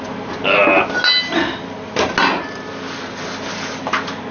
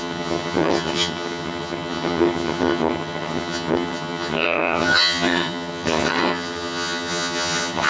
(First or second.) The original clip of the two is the first